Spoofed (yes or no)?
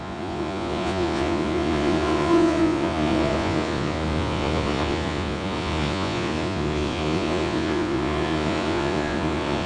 yes